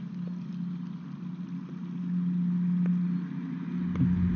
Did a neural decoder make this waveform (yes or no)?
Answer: no